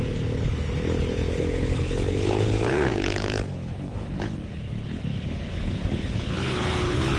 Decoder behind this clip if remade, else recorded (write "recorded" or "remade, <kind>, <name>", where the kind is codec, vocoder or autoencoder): remade, codec, HILCodec